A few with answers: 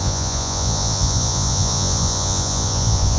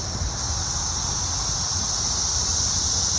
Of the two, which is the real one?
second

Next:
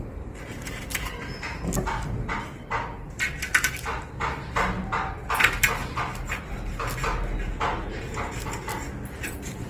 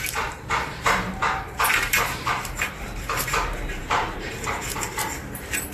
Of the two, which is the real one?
first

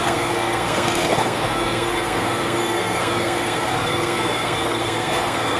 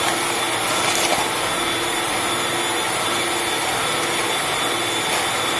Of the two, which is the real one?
second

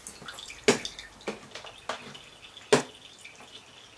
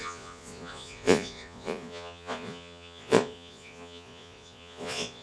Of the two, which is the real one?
first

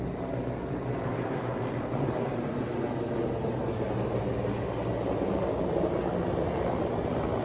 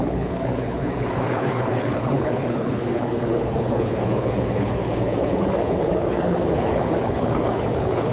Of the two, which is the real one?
first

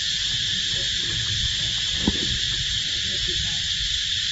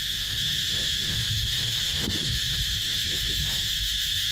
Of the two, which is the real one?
first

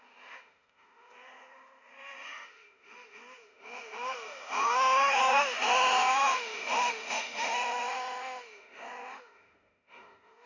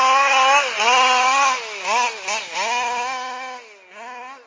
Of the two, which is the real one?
second